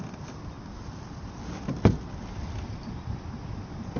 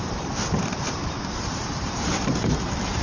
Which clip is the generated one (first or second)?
second